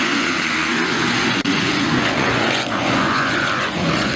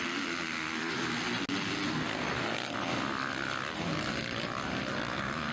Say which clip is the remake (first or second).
first